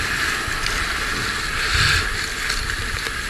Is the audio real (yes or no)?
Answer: yes